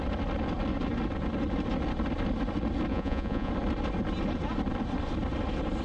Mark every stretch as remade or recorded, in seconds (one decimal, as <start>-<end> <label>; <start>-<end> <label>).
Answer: 0.0-2.9 recorded; 2.9-3.5 remade; 3.5-5.8 recorded